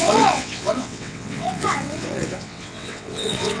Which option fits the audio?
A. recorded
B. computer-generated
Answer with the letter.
B